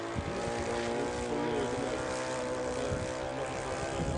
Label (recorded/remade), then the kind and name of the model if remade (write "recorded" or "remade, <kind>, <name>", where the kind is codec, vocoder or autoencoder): recorded